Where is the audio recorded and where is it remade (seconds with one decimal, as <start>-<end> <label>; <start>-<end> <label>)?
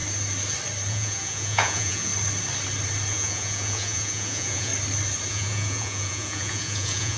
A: 0.0-0.9 recorded; 0.9-2.1 remade; 2.1-3.1 recorded; 3.1-4.7 remade; 4.7-5.3 recorded; 5.3-7.2 remade